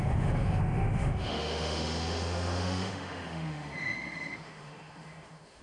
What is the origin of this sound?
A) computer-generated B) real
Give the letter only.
A